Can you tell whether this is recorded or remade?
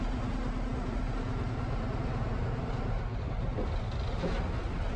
recorded